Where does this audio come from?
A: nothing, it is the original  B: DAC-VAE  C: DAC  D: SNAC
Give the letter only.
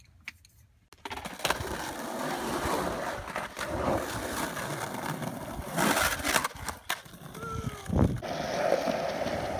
A